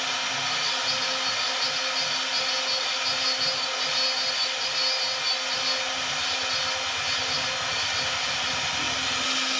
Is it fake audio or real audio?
real